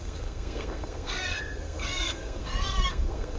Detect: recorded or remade remade